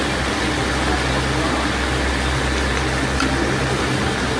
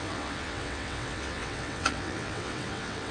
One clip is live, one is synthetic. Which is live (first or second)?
first